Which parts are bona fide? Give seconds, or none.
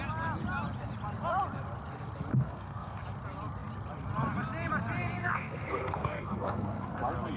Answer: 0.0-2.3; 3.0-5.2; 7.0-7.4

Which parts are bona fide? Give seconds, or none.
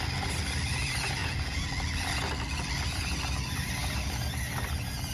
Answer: 0.0-1.2; 1.7-5.1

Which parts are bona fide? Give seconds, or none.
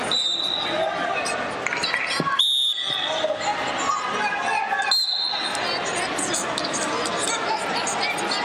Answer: 0.0-8.4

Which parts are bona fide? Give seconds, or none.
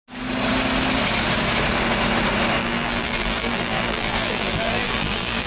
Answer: 0.0-2.6